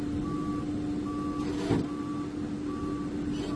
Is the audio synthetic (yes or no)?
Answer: no